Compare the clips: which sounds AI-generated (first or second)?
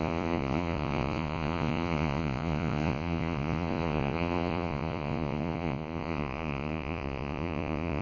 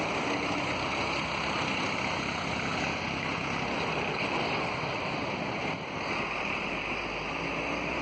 first